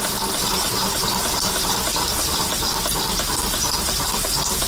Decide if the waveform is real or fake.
fake